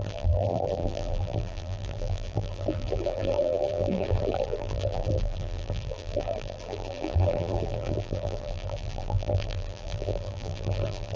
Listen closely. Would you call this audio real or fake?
fake